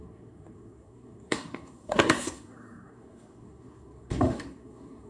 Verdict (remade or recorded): remade